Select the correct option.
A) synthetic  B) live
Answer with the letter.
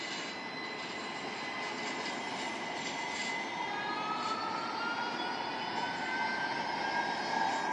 B